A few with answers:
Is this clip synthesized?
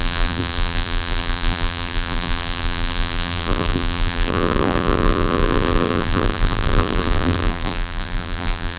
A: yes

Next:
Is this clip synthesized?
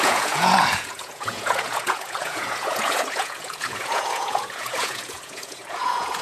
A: yes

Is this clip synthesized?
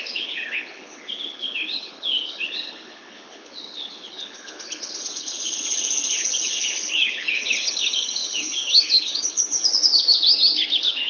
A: yes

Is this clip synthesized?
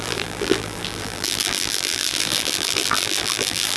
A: yes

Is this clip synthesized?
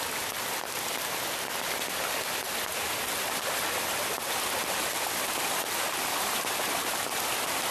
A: no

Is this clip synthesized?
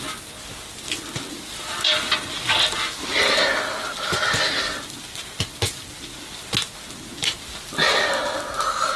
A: no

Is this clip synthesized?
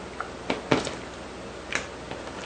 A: no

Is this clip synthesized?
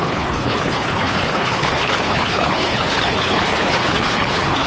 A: yes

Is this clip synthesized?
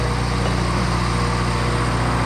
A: no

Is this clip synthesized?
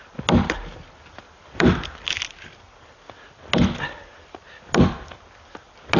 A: no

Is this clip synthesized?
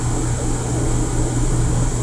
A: no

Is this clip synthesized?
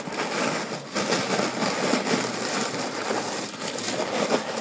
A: no